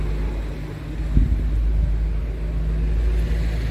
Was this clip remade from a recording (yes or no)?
no